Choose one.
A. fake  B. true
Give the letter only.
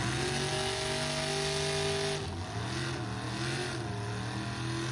B